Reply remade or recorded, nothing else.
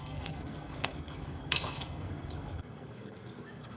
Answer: remade